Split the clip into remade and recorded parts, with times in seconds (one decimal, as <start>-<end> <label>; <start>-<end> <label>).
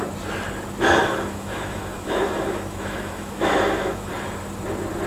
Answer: 0.0-1.0 recorded; 1.0-4.1 remade; 4.1-5.1 recorded